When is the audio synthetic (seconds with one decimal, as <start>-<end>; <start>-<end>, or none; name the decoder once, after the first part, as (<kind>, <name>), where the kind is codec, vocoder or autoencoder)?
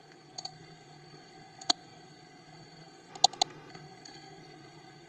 0.0-3.1 (codec, SNAC); 3.7-5.1